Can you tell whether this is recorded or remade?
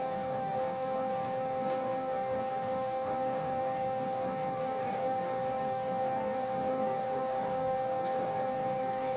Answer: remade